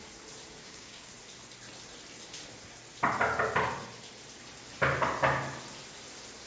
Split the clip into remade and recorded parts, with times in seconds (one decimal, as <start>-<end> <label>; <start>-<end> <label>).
0.0-0.6 recorded; 0.6-1.1 remade; 1.1-6.5 recorded